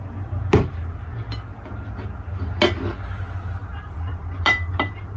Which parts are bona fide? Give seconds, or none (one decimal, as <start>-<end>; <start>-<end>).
0.8-3.9